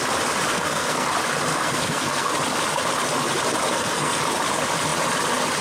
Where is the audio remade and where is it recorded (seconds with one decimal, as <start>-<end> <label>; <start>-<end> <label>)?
0.0-0.5 recorded; 0.5-1.1 remade; 1.1-1.5 recorded; 1.5-2.3 remade; 2.3-3.7 recorded; 3.7-4.2 remade; 4.2-5.6 recorded